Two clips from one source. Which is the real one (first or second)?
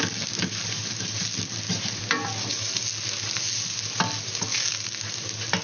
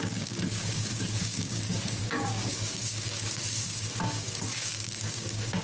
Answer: first